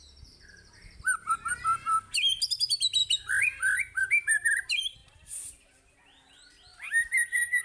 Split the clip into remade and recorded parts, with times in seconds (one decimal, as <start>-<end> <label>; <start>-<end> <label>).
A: 0.0-3.0 recorded; 3.0-4.0 remade; 4.0-5.0 recorded; 5.0-6.0 remade; 6.0-6.7 recorded; 6.7-7.6 remade